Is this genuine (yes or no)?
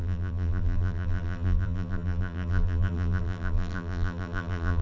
no